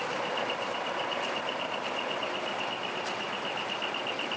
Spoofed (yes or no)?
no